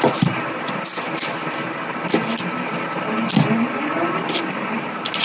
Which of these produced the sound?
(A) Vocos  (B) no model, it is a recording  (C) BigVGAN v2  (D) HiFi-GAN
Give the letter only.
B